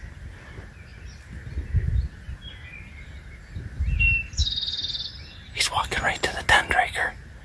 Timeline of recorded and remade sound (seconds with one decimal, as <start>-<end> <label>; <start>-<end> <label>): 0.0-7.4 recorded